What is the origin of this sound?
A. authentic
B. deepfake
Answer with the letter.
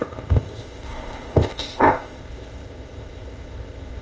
B